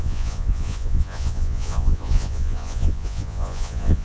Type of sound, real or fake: fake